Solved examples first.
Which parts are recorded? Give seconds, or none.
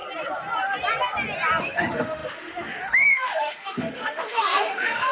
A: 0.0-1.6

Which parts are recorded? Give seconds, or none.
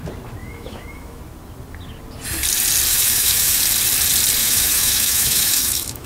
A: 0.0-0.4; 1.2-2.9; 3.6-4.4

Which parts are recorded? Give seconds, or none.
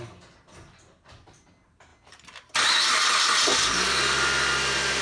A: 0.0-5.0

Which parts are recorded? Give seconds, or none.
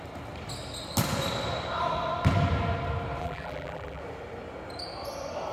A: 0.0-3.2; 4.0-5.5